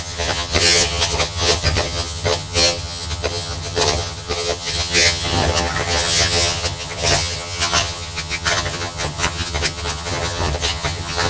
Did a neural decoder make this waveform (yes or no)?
yes